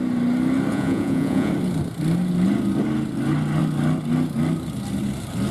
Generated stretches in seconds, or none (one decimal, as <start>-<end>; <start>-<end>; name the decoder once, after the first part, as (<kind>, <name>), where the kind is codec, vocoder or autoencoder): 0.7-1.5 (vocoder, Vocos)